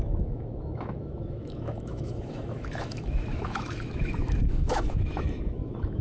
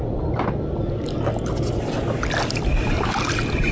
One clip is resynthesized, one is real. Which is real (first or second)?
second